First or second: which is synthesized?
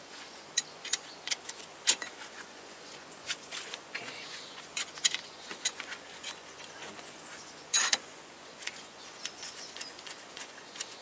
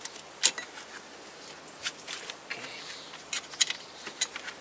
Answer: first